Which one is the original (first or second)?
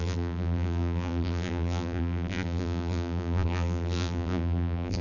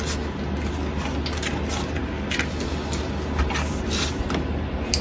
second